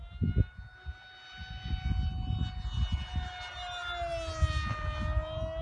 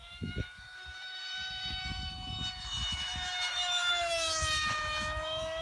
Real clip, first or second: first